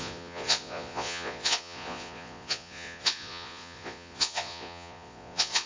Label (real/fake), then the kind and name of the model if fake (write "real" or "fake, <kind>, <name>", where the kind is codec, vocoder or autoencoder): fake, vocoder, Vocos